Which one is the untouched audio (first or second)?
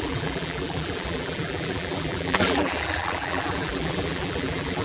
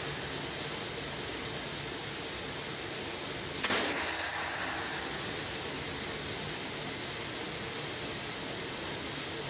second